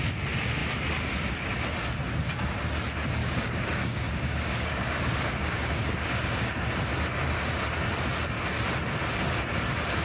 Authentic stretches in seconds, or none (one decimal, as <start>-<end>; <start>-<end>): 0.0-3.2; 6.5-10.0